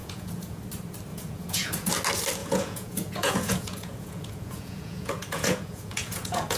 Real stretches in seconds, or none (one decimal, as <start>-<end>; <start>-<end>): 0.6-1.1; 1.9-2.4

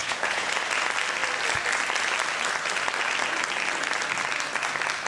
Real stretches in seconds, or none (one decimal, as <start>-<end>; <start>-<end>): 0.5-5.1

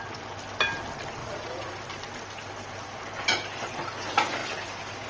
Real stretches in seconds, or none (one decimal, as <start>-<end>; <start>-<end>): 0.0-1.2; 1.7-5.1

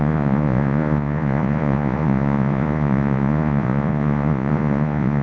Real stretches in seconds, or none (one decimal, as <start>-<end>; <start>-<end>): none